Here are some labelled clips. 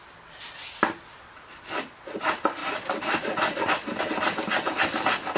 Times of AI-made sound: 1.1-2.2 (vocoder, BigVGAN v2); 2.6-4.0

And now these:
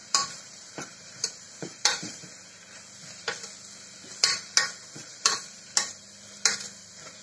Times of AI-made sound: 0.0-2.5 (vocoder, BigVGAN v2); 5.1-6.0

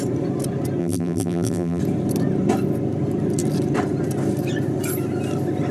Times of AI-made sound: 0.8-1.8 (vocoder, BigVGAN v2)

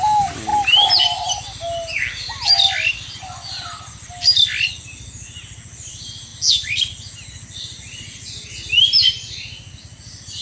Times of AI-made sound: none